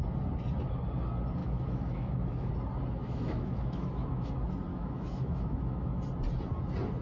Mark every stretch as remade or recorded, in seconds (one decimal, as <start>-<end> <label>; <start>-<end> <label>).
0.0-1.4 recorded; 1.4-2.5 remade; 2.5-3.0 recorded; 3.0-4.3 remade; 4.3-4.7 recorded; 4.7-6.0 remade; 6.0-7.0 recorded